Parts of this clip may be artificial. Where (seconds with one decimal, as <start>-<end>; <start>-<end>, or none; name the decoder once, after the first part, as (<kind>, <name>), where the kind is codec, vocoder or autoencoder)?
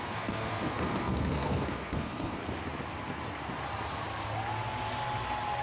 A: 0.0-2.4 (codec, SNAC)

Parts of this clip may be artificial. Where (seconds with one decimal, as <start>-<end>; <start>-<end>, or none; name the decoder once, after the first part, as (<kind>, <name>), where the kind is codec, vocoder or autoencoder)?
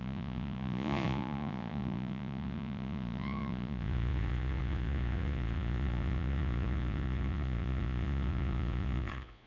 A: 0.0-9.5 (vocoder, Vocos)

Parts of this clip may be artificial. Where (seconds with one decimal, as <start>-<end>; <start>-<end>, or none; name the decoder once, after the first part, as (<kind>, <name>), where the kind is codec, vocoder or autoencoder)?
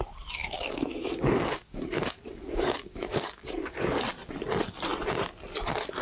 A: 0.4-4.0 (codec, DAC)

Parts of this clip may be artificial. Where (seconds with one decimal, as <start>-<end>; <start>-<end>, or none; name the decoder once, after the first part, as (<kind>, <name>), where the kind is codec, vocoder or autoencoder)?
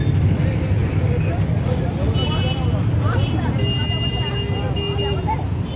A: none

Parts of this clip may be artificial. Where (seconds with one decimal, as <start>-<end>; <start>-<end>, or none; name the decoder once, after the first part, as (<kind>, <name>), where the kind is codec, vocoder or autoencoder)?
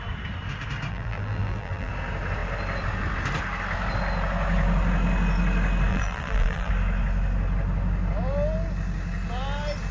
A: 0.9-1.9 (vocoder, BigVGAN v2); 5.9-6.7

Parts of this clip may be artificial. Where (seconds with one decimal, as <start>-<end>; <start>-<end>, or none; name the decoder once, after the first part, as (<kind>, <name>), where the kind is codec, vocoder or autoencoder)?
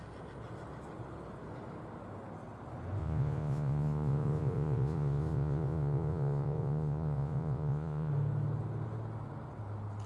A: 3.0-8.1 (vocoder, Vocos)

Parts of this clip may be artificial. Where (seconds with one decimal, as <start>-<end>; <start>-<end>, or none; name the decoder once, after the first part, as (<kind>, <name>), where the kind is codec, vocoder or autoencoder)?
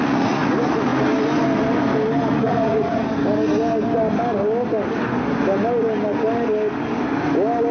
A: 0.0-0.9 (vocoder, Vocos); 2.3-2.9